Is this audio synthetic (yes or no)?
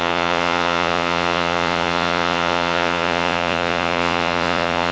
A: yes